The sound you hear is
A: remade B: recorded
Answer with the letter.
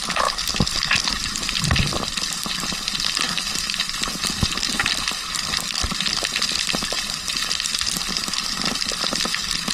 B